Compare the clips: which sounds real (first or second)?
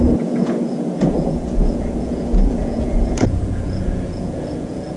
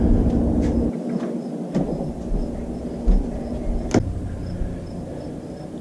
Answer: second